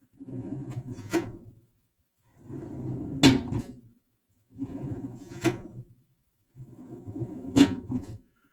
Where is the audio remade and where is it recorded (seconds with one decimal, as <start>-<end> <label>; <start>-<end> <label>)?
0.0-2.3 remade; 2.3-3.6 recorded; 3.6-8.5 remade